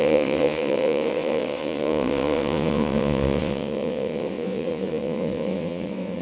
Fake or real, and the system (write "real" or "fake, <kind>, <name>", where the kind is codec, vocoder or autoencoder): fake, vocoder, WaveNeXt